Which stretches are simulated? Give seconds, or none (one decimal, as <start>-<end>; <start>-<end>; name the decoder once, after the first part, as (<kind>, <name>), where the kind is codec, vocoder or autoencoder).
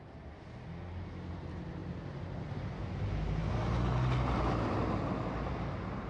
none